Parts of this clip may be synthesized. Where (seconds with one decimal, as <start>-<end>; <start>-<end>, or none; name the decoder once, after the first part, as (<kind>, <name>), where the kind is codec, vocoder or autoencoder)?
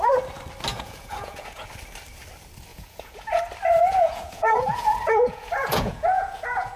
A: 0.7-1.7 (vocoder, Vocos); 2.7-3.4; 3.8-6.8